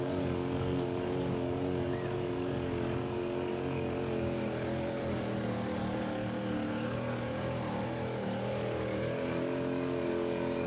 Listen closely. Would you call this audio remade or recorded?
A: remade